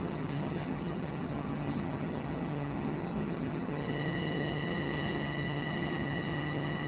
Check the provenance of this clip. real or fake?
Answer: fake